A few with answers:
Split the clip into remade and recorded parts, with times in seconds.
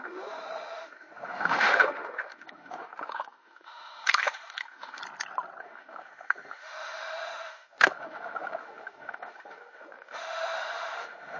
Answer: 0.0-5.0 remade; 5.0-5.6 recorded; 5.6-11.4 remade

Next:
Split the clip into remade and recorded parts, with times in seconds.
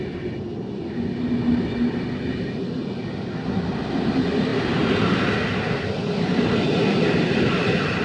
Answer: 0.0-8.0 recorded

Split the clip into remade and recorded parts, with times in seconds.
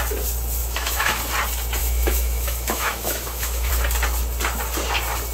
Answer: 0.0-0.6 recorded; 0.6-1.2 remade; 1.2-1.8 recorded; 1.8-3.7 remade; 3.7-5.3 recorded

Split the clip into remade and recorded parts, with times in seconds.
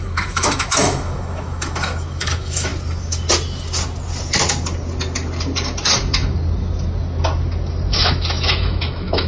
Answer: 0.0-2.7 remade; 2.7-7.9 recorded; 7.9-9.3 remade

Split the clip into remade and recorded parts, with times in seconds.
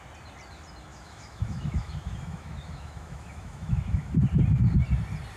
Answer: 0.0-0.9 recorded; 0.9-4.1 remade; 4.1-5.4 recorded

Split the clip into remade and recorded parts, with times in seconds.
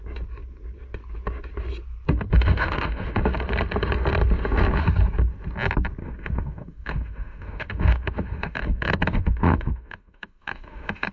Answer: 0.0-2.3 recorded; 2.3-3.2 remade; 3.2-6.0 recorded; 6.0-11.1 remade